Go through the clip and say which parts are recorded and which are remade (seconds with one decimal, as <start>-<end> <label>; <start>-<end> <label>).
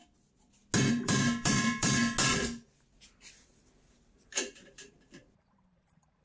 0.0-0.9 recorded; 0.9-2.0 remade; 2.0-3.9 recorded; 3.9-6.2 remade